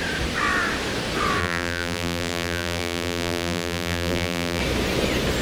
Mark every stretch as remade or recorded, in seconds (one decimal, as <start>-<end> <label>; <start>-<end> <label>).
0.0-1.4 recorded; 1.4-4.6 remade; 4.6-5.4 recorded